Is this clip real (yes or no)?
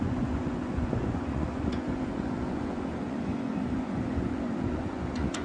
no